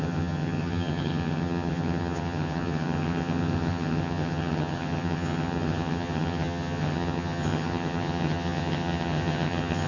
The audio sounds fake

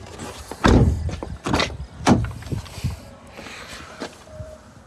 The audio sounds fake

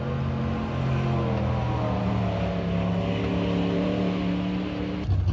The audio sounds real